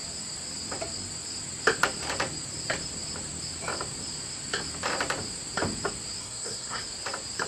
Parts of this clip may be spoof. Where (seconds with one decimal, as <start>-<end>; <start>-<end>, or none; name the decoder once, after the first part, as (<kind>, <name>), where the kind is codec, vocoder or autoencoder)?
6.2-6.8 (codec, SNAC)